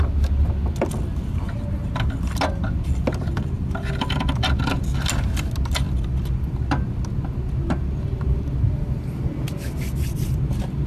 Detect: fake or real real